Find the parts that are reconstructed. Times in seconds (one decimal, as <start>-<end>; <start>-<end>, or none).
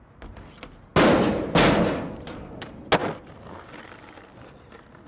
none